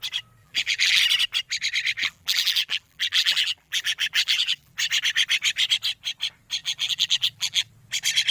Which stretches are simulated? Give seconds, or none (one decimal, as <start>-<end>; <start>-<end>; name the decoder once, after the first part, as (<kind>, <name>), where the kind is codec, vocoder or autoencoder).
0.4-1.0 (vocoder, BigVGAN v2); 2.0-4.7; 6.6-7.7